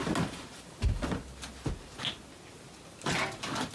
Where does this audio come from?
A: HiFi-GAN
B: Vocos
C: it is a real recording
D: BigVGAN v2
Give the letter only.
C